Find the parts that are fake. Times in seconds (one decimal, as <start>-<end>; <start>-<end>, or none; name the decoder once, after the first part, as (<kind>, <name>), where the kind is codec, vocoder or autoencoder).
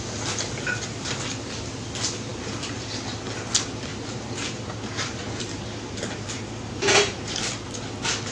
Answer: 3.9-7.5 (vocoder, BigVGAN v2)